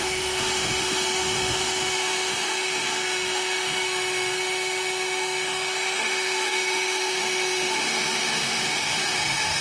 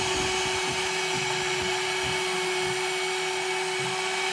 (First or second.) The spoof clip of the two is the first